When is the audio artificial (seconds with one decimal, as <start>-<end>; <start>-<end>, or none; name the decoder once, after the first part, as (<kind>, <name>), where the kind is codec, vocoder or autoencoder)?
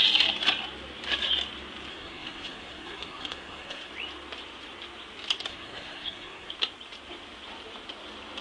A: 1.9-3.9 (codec, SNAC); 5.5-6.5